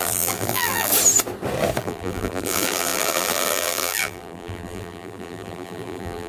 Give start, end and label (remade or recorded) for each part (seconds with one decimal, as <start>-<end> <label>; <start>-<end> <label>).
0.0-0.9 remade; 0.9-1.8 recorded; 1.8-6.3 remade